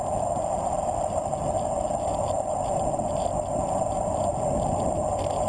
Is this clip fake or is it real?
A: real